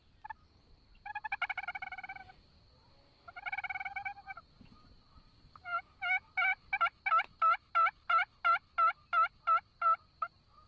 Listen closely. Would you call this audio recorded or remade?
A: recorded